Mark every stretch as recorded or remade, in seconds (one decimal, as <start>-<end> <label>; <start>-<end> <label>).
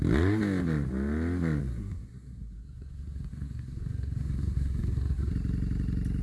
0.0-1.6 recorded; 1.6-5.3 remade; 5.3-6.2 recorded